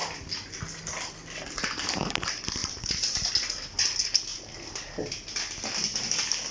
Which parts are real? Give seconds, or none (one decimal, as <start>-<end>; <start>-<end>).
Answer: 0.0-2.6; 3.3-6.5